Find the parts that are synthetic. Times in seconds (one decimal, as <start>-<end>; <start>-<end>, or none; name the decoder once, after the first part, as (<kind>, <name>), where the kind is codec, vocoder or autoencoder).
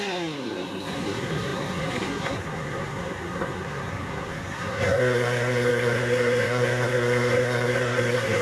0.0-8.4 (codec, SNAC)